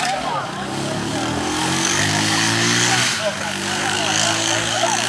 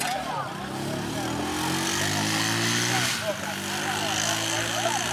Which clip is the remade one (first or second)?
first